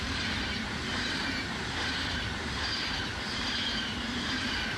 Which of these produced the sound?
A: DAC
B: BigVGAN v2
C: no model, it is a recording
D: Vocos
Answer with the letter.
B